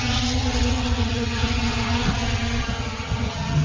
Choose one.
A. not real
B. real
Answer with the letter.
A